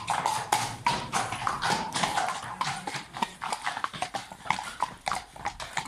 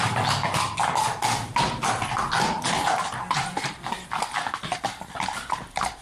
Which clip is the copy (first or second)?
first